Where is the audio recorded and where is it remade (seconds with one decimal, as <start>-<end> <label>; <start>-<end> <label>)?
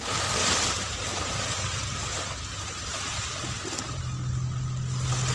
0.0-0.4 recorded; 0.4-2.1 remade; 2.1-5.3 recorded